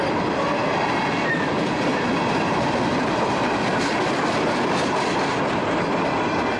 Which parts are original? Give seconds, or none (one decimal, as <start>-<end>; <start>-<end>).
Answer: 0.0-6.6